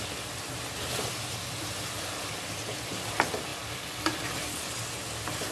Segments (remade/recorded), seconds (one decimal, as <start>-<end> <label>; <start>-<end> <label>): 0.0-5.5 recorded